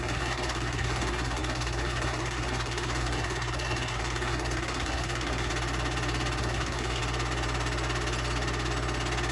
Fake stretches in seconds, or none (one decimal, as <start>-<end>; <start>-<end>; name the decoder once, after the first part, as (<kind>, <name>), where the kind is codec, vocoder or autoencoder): 0.0-5.5 (codec, SNAC); 6.4-7.0

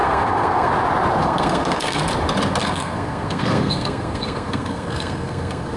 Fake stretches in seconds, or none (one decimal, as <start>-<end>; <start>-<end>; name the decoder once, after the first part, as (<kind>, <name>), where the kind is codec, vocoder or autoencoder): 0.0-0.7 (codec, SNAC); 1.2-2.0; 2.6-5.8

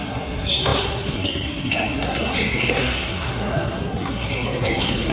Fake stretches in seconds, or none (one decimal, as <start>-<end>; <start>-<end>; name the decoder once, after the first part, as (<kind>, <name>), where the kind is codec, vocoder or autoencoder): 0.0-5.1 (codec, SNAC)